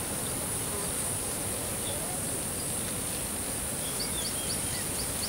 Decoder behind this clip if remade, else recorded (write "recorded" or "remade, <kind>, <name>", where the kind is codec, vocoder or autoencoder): recorded